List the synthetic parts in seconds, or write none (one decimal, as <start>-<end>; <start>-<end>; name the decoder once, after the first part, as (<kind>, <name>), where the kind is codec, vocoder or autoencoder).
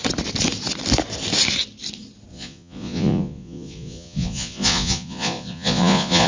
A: 2.3-6.3 (vocoder, Vocos)